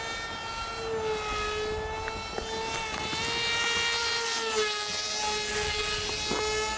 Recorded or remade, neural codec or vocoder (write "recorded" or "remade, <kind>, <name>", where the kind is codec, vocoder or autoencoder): recorded